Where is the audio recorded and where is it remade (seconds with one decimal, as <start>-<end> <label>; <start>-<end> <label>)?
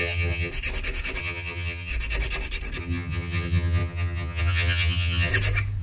0.0-0.5 remade; 0.5-1.2 recorded; 1.2-1.9 remade; 1.9-2.8 recorded; 2.8-5.3 remade; 5.3-5.8 recorded